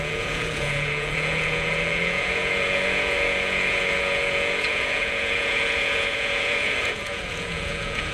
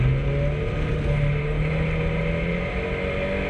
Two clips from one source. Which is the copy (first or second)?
first